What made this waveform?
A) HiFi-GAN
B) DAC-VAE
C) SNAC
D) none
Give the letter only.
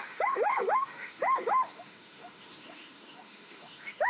B